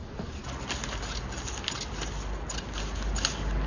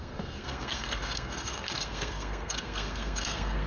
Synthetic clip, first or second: second